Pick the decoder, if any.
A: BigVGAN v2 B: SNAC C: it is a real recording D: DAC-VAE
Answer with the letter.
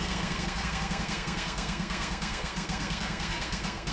B